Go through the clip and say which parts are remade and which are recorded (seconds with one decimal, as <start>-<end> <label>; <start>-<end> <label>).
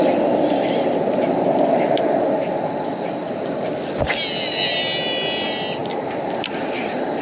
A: 0.0-7.2 recorded